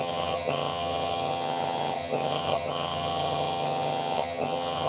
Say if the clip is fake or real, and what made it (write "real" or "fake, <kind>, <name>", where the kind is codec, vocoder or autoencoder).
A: fake, vocoder, HiFi-GAN